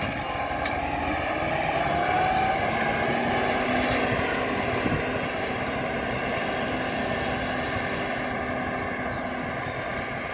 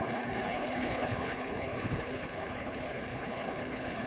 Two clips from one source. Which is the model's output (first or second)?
second